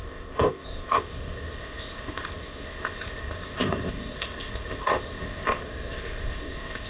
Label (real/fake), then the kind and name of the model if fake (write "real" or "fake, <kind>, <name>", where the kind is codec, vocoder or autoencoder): fake, codec, ZipCodec